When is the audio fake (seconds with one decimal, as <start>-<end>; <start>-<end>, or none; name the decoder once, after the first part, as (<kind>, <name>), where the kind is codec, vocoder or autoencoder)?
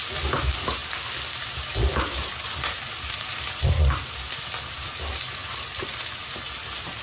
none